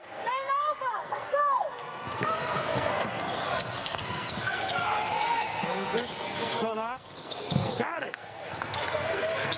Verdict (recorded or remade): remade